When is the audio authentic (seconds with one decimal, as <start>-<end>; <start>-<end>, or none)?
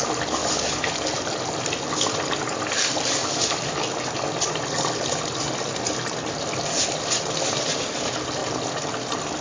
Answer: 0.0-9.4